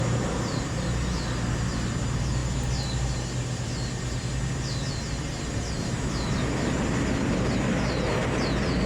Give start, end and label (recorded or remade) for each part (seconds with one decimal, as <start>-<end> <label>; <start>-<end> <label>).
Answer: 0.0-8.9 recorded